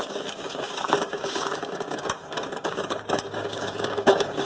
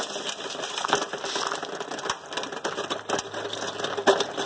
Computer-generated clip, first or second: first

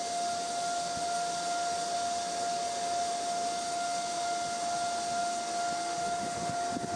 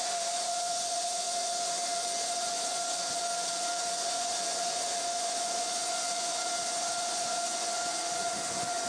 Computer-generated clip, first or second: second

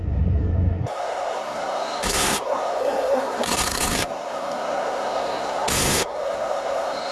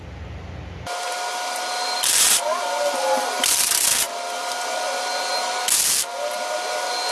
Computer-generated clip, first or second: first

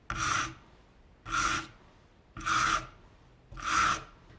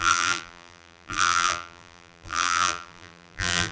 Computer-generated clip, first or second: second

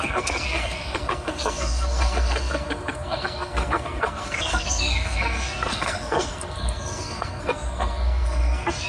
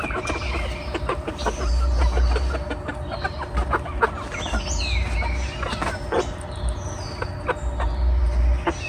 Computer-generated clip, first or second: first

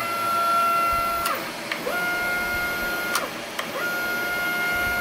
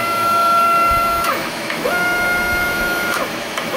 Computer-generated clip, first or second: second